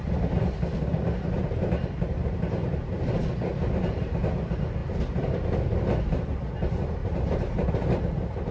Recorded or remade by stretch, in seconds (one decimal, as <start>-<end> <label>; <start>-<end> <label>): 0.0-0.9 recorded; 0.9-2.9 remade; 2.9-7.0 recorded; 7.0-7.7 remade; 7.7-8.5 recorded